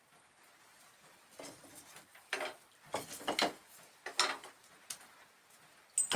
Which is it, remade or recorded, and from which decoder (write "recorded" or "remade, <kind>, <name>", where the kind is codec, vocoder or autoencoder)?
recorded